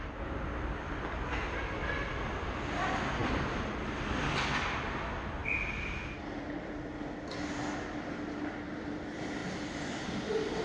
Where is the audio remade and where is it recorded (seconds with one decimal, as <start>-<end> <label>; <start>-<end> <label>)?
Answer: 0.0-10.6 recorded